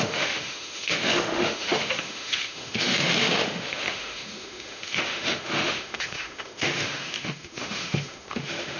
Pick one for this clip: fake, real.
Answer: fake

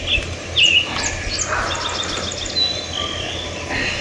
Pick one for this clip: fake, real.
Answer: real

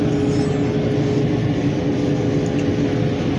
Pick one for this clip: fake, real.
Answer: real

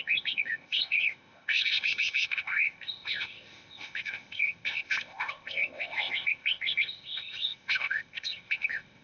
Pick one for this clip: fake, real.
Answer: fake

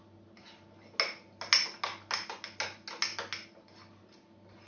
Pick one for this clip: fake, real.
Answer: real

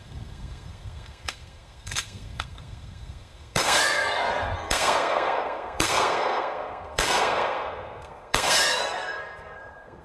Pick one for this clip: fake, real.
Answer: fake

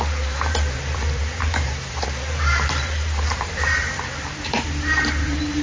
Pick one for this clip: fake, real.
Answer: fake